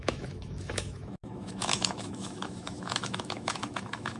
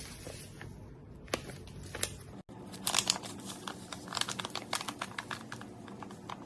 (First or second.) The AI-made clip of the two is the first